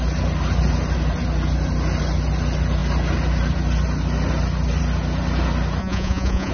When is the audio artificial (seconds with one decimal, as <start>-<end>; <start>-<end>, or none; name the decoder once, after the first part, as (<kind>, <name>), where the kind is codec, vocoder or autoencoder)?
5.8-6.5 (vocoder, Vocos)